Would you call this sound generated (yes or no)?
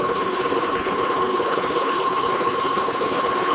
yes